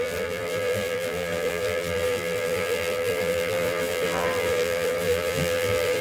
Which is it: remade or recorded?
remade